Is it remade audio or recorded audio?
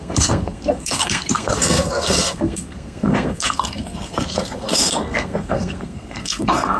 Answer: remade